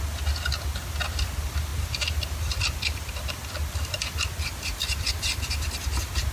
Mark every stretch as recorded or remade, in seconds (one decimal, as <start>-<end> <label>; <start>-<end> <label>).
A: 0.0-6.3 recorded